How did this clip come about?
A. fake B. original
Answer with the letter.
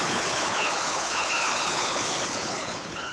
A